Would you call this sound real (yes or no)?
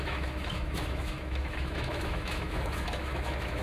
no